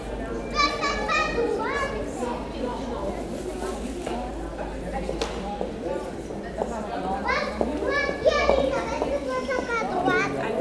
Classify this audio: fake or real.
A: real